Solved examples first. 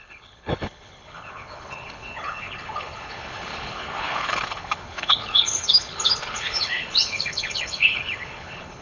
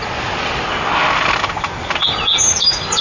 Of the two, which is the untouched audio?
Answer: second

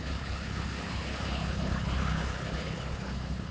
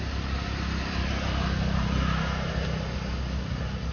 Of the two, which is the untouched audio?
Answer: second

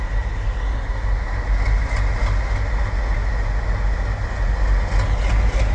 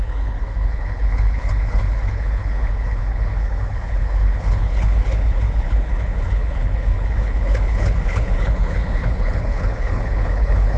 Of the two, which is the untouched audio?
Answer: first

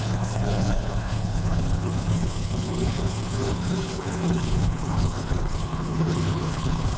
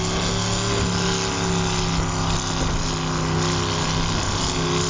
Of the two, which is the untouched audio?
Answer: second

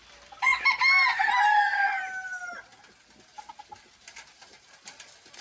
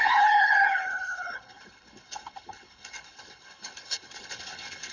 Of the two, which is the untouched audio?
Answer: first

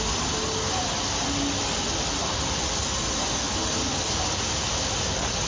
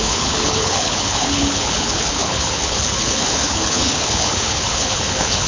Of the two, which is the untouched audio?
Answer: first